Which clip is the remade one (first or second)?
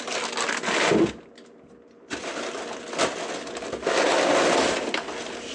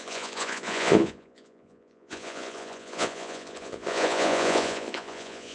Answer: second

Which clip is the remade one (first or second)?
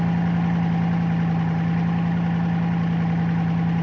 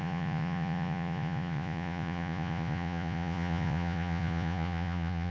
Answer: second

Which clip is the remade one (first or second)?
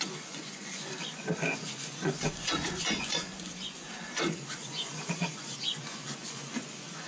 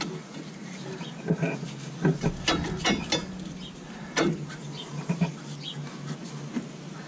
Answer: first